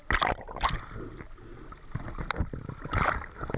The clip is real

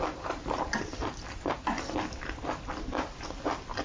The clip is real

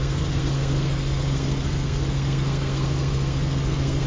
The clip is fake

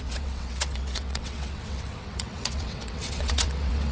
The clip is fake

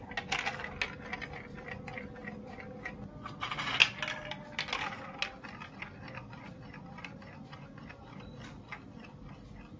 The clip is real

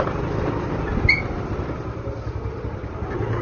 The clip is real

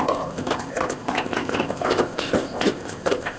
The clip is fake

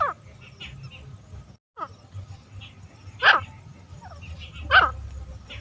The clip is real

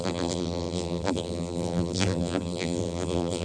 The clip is fake